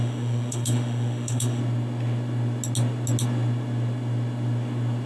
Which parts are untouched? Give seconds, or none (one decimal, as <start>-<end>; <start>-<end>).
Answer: 1.6-5.1